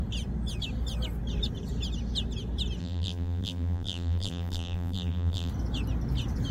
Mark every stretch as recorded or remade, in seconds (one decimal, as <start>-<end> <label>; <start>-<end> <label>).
0.0-2.8 recorded; 2.8-5.5 remade; 5.5-6.5 recorded